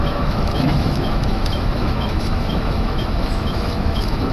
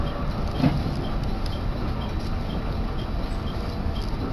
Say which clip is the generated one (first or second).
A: first